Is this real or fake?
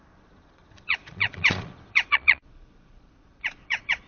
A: fake